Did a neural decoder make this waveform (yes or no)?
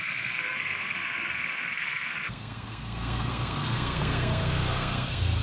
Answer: yes